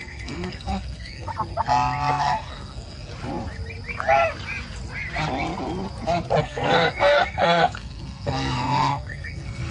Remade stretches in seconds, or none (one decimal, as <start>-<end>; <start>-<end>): 0.0-1.3; 2.1-3.1; 6.4-9.7